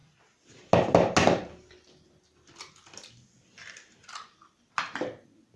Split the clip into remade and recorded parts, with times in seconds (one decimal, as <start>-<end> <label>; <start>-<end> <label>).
0.0-5.6 recorded